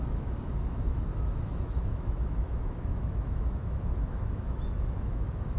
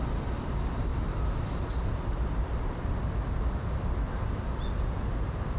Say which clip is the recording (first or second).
second